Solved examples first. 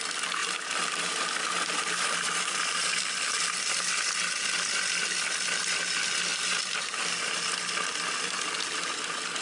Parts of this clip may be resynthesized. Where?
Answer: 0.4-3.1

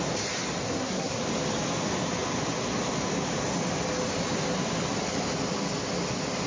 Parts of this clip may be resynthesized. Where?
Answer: 0.6-1.2

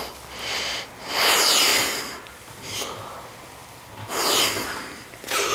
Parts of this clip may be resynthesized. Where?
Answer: 1.7-2.3; 3.6-4.1

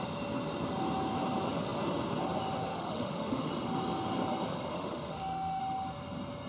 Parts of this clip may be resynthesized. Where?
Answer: 2.7-3.5; 4.7-5.6

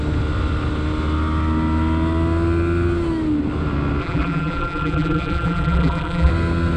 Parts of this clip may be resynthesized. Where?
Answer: 4.0-6.3

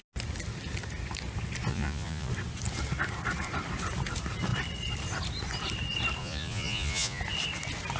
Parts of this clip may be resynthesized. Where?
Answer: 1.7-2.3; 6.2-7.2